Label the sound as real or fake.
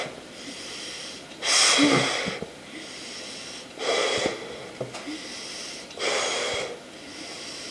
real